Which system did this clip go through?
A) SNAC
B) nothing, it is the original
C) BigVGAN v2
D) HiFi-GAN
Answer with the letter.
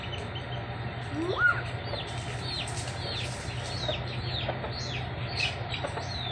B